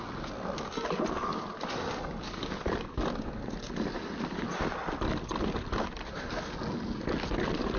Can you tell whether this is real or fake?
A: real